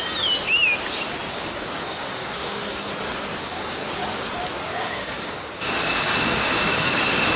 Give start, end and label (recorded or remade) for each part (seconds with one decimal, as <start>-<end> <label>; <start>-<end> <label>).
0.0-1.3 recorded; 1.3-2.9 remade; 2.9-3.4 recorded; 3.4-3.9 remade; 3.9-4.7 recorded; 4.7-7.0 remade; 7.0-7.4 recorded

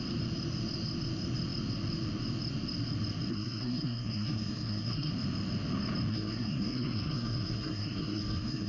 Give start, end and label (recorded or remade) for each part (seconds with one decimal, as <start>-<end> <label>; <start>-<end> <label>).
0.0-3.3 recorded; 3.3-5.1 remade; 5.1-6.1 recorded; 6.1-8.7 remade

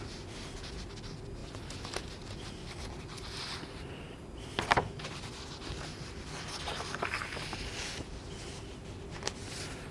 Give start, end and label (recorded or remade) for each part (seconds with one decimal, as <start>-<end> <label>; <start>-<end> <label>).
0.0-9.9 recorded

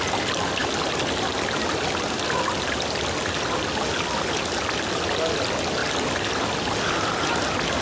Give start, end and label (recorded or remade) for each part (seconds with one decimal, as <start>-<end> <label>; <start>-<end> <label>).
0.0-5.8 recorded; 5.8-7.8 remade